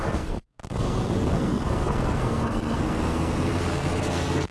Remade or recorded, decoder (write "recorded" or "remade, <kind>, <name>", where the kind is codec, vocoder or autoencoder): remade, codec, SNAC